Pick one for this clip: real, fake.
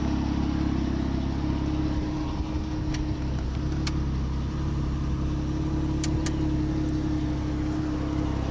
real